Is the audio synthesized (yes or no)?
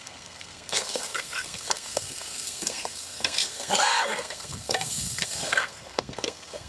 yes